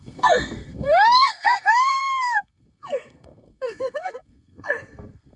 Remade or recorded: remade